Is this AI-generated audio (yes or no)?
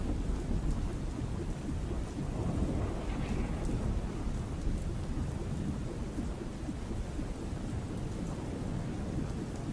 no